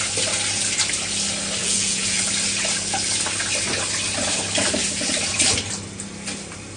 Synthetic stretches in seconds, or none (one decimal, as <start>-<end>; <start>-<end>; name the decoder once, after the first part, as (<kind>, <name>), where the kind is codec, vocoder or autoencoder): 1.6-2.3 (vocoder, Vocos)